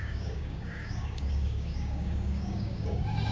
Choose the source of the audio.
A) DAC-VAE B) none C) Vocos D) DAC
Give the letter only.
D